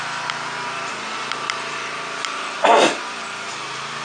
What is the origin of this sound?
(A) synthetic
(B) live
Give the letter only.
A